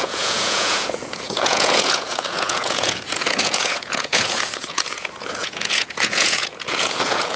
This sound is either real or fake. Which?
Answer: fake